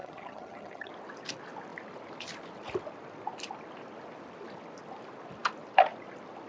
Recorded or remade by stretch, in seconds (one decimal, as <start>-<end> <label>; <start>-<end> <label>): 0.0-0.9 remade; 0.9-6.5 recorded